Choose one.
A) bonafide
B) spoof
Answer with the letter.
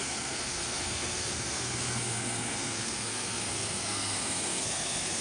B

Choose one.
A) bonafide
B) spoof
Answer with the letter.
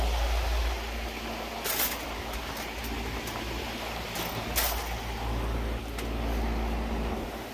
A